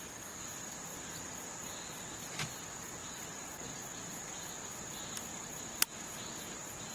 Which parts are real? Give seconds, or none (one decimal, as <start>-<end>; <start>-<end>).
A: 0.0-6.9